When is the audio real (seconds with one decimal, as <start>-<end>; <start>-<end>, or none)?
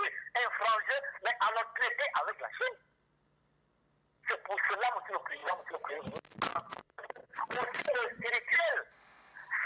0.0-5.4; 6.0-6.5; 8.3-9.7